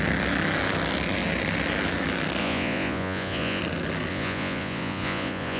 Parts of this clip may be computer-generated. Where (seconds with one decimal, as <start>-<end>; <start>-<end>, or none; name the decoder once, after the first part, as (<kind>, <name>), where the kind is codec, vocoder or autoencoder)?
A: 2.4-3.6 (vocoder, Vocos); 4.1-5.6